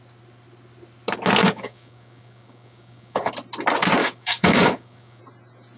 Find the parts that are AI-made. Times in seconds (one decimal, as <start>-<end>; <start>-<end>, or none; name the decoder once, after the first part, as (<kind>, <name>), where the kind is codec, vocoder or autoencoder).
1.4-3.3 (codec, DAC); 4.0-5.2